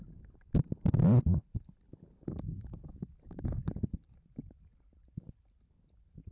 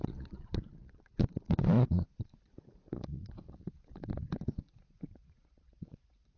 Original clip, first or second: first